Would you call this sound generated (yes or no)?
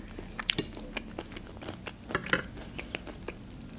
no